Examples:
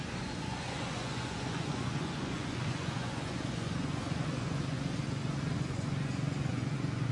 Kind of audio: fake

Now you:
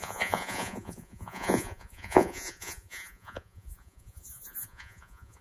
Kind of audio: fake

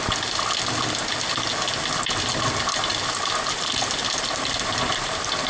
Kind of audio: real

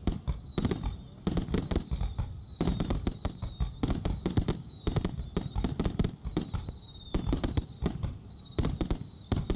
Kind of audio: real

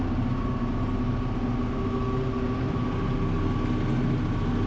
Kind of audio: real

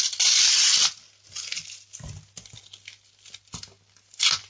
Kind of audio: real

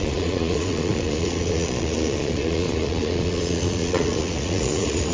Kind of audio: fake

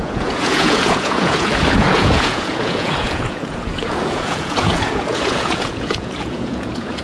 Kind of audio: fake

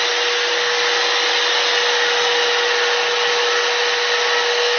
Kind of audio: real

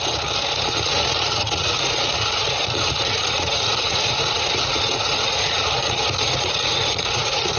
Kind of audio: fake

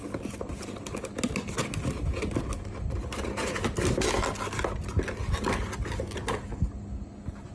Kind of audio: real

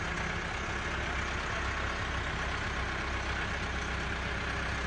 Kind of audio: real